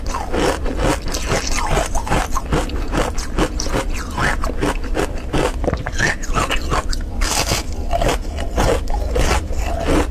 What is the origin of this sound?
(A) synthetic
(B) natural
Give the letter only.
B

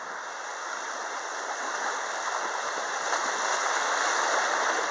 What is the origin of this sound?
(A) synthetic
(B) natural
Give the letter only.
B